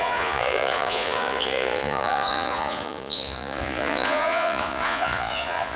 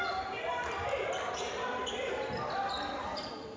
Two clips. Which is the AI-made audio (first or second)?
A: first